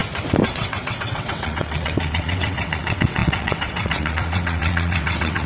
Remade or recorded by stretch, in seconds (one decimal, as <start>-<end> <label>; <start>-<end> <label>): 0.0-0.5 recorded; 0.5-5.5 remade